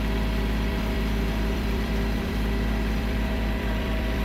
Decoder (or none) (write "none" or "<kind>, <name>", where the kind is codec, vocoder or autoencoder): vocoder, BigVGAN v2